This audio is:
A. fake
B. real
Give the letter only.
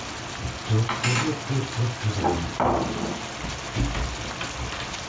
B